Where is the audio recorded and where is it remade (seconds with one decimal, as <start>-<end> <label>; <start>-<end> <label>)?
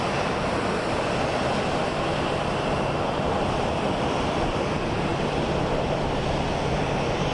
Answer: 0.0-7.3 recorded